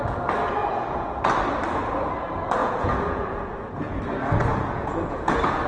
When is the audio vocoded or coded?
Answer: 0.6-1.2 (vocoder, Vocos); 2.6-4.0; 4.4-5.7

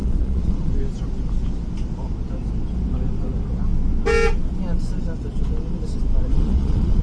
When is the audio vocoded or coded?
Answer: 0.0-0.7 (vocoder, Vocos); 6.3-7.0

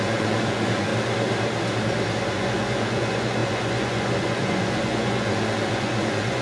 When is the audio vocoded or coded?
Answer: 0.0-0.9 (vocoder, Vocos); 2.3-6.4

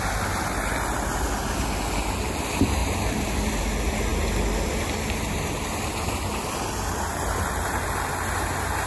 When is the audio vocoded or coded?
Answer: none

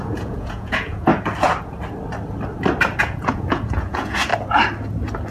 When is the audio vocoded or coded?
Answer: 0.0-1.1 (vocoder, Vocos); 3.0-4.3